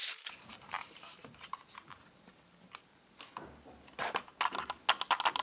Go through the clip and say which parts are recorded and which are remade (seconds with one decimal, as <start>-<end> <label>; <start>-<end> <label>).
0.0-3.2 remade; 3.2-5.4 recorded